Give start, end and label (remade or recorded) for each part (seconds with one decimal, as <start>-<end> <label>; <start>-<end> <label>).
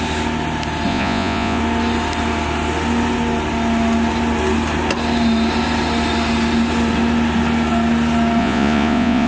0.0-0.9 recorded; 0.9-1.6 remade; 1.6-8.4 recorded; 8.4-9.3 remade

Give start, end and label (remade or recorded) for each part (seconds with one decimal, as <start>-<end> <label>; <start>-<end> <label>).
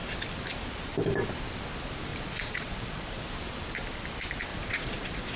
0.0-2.1 recorded; 2.1-3.3 remade; 3.3-4.5 recorded; 4.5-5.4 remade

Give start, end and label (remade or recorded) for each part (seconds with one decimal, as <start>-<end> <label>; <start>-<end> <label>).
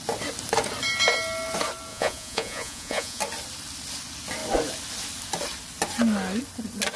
0.0-1.9 recorded; 1.9-3.2 remade; 3.2-7.0 recorded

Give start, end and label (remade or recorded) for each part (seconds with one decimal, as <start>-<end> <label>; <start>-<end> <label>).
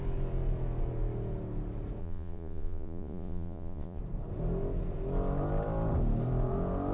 0.0-2.0 recorded; 2.0-4.0 remade; 4.0-6.9 recorded